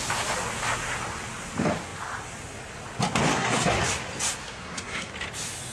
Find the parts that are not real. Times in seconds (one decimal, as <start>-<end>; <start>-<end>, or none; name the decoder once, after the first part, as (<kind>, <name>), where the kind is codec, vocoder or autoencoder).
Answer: 3.3-3.8 (codec, SNAC); 4.4-5.1